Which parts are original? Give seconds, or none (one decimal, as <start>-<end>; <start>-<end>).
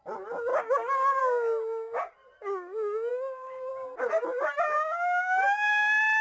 0.0-0.5; 1.2-3.1; 3.7-6.2